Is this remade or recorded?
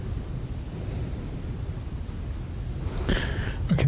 recorded